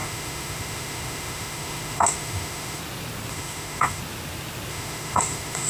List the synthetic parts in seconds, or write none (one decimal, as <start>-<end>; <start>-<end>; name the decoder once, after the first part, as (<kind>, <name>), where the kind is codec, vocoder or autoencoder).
0.0-2.8 (autoencoder, DAC-VAE); 3.3-4.0; 4.7-5.7